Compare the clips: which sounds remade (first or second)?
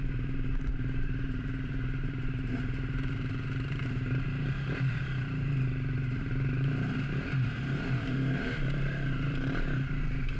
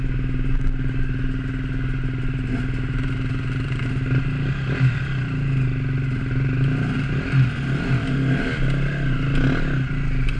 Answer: first